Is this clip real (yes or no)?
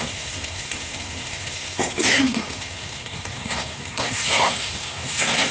no